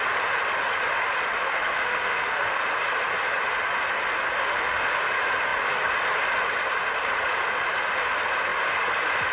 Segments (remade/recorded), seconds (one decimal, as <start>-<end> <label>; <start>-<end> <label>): 0.0-1.4 recorded; 1.4-2.6 remade; 2.6-4.4 recorded; 4.4-5.0 remade; 5.0-9.3 recorded